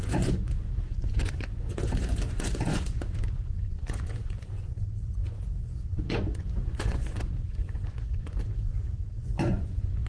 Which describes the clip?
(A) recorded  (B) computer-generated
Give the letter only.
B